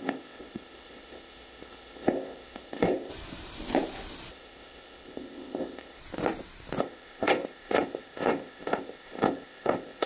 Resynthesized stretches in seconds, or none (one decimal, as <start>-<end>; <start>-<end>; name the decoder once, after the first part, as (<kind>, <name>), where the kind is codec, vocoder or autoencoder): 0.0-3.1 (codec, ZipCodec); 4.3-6.0; 6.8-10.1